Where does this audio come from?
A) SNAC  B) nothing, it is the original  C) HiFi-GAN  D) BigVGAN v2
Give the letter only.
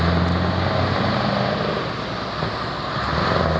B